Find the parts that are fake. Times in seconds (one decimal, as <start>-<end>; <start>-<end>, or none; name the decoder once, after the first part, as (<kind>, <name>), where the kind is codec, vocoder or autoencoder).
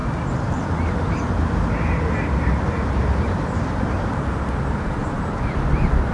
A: none